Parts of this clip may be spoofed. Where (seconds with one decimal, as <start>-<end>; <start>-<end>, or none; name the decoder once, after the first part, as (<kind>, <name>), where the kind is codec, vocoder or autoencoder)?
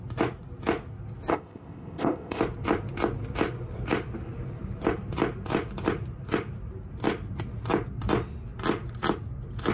1.3-2.4 (codec, ZipCodec)